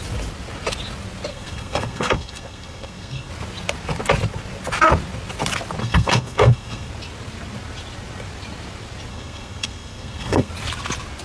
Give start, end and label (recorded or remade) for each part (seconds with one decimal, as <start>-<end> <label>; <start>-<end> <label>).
0.0-1.3 recorded; 1.3-3.3 remade; 3.3-5.8 recorded; 5.8-6.9 remade; 6.9-9.1 recorded; 9.1-10.5 remade; 10.5-11.2 recorded